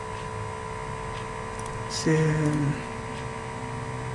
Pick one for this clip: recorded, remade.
recorded